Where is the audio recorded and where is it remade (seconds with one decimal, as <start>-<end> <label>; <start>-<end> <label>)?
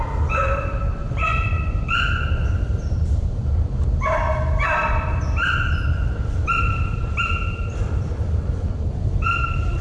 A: 0.0-1.2 recorded; 1.2-2.3 remade; 2.3-9.8 recorded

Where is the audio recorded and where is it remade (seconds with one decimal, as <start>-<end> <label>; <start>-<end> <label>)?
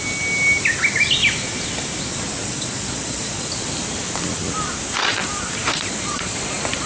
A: 0.0-2.4 recorded; 2.4-3.5 remade; 3.5-5.6 recorded; 5.6-6.4 remade; 6.4-6.9 recorded